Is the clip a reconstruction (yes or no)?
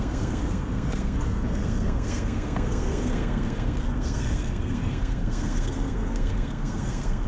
yes